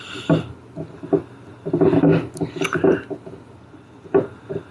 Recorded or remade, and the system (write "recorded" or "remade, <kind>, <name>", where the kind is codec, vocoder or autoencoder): recorded